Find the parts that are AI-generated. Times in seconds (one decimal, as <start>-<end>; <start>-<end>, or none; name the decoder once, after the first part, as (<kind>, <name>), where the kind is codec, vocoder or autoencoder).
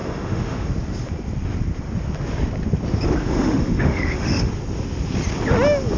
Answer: 0.0-0.7 (autoencoder, DAC-VAE); 3.2-4.5